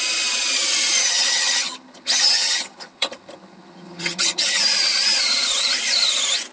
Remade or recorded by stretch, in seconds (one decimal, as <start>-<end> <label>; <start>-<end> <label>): 0.0-1.0 recorded; 1.0-4.6 remade; 4.6-6.5 recorded